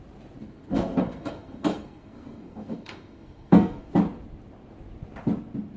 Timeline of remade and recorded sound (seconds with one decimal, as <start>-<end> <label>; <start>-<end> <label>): 0.0-0.4 recorded; 0.4-3.9 remade; 3.9-5.8 recorded